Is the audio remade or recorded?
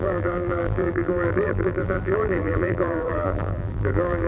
remade